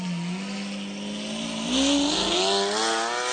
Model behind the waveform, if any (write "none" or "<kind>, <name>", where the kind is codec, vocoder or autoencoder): none